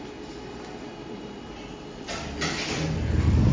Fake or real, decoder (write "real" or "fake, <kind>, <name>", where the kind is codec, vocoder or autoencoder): fake, vocoder, BigVGAN v2